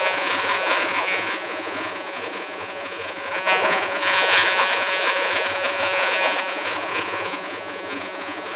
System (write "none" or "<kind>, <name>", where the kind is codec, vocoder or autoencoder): vocoder, Vocos